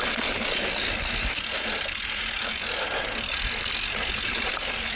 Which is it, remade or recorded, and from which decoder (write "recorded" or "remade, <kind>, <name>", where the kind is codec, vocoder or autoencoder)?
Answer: recorded